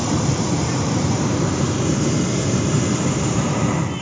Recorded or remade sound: remade